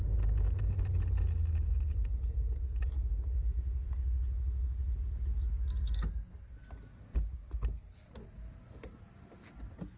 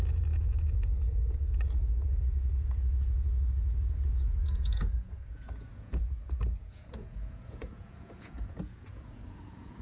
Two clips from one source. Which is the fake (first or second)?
second